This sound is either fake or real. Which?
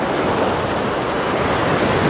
real